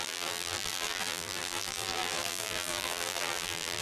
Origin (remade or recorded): remade